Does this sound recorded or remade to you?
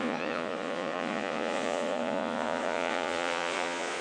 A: remade